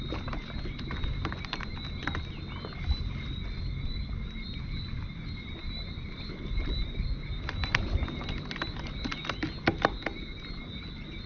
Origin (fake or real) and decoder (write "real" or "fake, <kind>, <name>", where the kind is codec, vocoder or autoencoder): real